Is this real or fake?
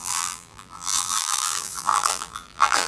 fake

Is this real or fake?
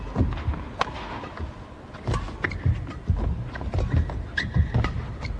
real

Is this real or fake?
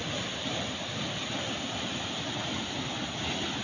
real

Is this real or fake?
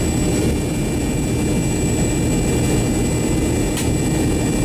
real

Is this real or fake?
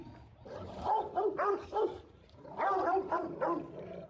fake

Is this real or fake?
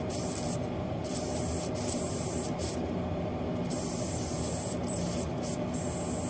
real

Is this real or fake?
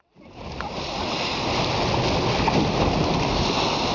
real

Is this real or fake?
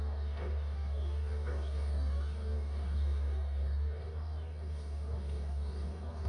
fake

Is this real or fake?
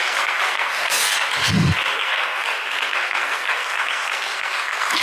fake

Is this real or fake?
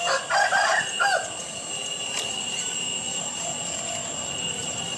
real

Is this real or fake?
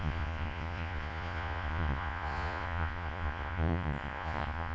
fake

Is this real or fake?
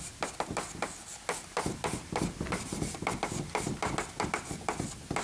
real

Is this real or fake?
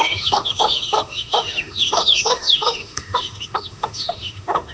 fake